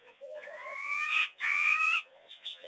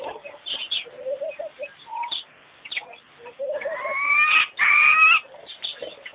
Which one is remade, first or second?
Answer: first